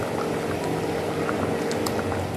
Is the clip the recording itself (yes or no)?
yes